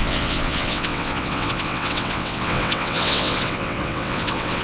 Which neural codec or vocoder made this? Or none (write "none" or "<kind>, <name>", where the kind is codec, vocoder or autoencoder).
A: vocoder, WaveNeXt